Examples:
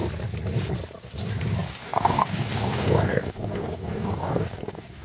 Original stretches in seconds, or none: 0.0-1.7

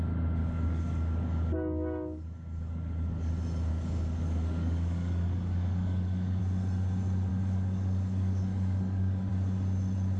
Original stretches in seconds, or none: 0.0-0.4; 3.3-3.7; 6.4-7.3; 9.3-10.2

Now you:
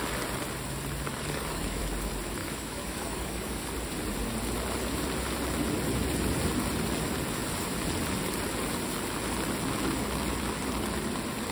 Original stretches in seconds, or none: 0.0-1.1; 1.8-2.4; 3.7-11.5